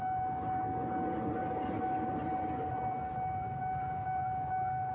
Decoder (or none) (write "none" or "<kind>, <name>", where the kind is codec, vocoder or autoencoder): none